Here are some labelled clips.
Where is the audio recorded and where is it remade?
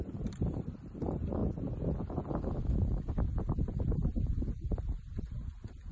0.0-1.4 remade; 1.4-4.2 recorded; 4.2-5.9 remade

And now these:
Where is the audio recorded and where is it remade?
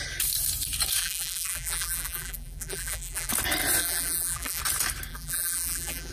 0.0-1.0 recorded; 1.0-3.3 remade; 3.3-3.8 recorded; 3.8-4.6 remade; 4.6-5.1 recorded; 5.1-6.1 remade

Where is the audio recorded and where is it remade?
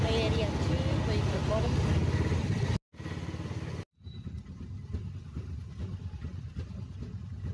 0.0-7.5 recorded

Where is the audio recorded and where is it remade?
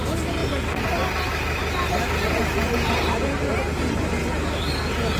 0.0-5.2 recorded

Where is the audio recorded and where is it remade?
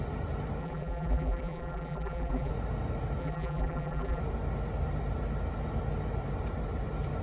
0.0-0.6 recorded; 0.6-2.5 remade; 2.5-3.2 recorded; 3.2-4.2 remade; 4.2-7.2 recorded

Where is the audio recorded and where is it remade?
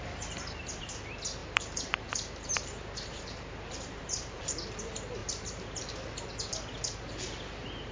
0.0-1.4 recorded; 1.4-4.4 remade; 4.4-5.2 recorded; 5.2-5.8 remade; 5.8-7.9 recorded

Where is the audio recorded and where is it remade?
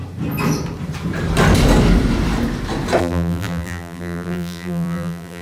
0.0-3.0 recorded; 3.0-5.4 remade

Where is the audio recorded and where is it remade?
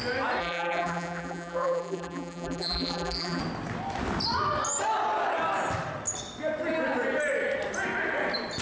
0.0-0.4 recorded; 0.4-3.4 remade; 3.4-8.6 recorded